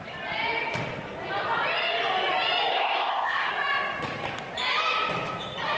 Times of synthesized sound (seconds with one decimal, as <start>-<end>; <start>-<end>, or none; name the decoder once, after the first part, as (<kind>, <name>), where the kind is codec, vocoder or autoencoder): 2.7-3.5 (codec, ZipCodec)